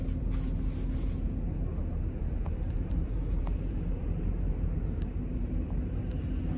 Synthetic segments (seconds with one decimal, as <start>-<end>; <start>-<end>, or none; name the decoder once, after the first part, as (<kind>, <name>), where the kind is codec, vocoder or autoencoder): 1.7-5.5 (vocoder, BigVGAN v2)